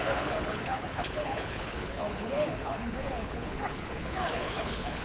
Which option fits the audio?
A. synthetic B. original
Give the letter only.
A